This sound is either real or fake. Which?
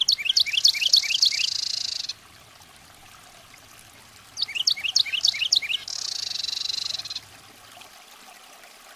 real